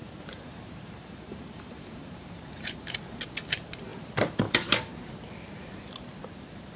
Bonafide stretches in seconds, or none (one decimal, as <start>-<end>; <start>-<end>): 3.0-3.9; 4.9-6.8